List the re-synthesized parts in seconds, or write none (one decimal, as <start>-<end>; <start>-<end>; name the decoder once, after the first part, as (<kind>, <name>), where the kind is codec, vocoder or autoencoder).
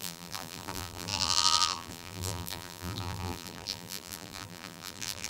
0.0-5.3 (vocoder, BigVGAN v2)